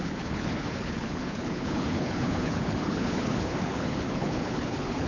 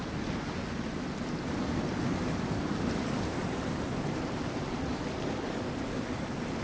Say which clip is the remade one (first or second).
first